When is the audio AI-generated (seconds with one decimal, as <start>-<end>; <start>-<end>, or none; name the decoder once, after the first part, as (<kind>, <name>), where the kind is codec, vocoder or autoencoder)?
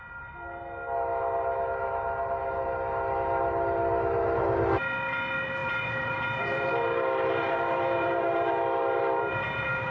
5.6-9.9 (vocoder, BigVGAN v2)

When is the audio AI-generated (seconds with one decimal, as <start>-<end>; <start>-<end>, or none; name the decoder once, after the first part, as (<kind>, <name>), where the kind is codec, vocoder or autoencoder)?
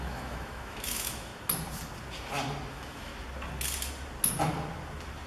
0.0-1.3 (autoencoder, DAC-VAE); 2.7-3.1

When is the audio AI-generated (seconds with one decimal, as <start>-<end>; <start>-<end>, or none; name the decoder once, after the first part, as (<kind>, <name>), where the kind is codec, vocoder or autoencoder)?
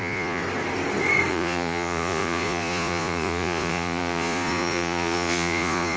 0.0-0.4 (vocoder, Vocos); 1.3-6.0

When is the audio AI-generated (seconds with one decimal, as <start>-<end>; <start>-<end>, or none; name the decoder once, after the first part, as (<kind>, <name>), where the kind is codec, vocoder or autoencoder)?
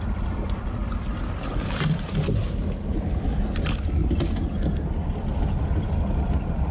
0.0-0.8 (vocoder, BigVGAN v2); 2.8-4.0; 5.4-6.7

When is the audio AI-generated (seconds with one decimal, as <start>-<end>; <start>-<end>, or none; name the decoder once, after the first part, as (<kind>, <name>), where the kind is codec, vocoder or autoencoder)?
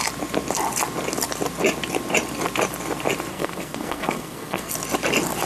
3.3-4.7 (codec, SNAC)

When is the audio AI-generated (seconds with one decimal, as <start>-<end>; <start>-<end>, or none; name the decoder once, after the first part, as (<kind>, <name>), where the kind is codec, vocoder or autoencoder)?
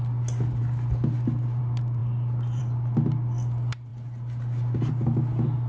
none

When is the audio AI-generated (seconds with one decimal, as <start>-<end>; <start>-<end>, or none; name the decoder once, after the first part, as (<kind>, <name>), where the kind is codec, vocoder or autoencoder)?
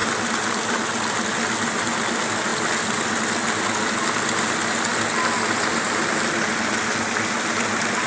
none